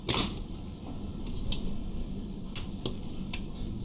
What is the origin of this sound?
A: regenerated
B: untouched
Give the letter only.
B